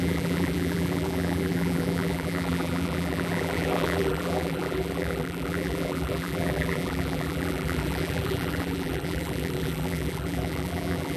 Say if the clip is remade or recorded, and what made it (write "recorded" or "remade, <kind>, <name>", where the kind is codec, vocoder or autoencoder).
remade, vocoder, BigVGAN v2